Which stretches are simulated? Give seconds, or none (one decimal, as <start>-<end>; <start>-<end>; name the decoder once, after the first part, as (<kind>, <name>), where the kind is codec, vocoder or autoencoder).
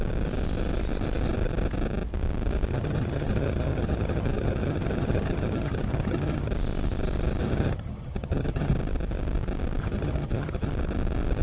2.7-6.5 (vocoder, HiFi-GAN); 7.4-8.7; 9.8-10.7